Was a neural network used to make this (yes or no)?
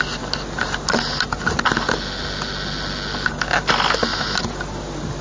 no